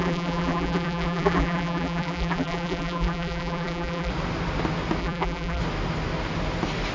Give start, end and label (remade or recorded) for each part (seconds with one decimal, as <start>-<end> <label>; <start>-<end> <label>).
0.0-4.1 remade; 4.1-5.0 recorded; 5.0-5.6 remade; 5.6-6.9 recorded